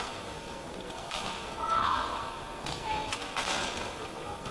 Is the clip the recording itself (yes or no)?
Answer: no